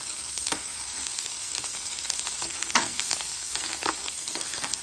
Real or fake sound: fake